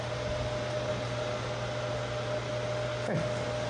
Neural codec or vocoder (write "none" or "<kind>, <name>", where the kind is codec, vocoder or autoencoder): none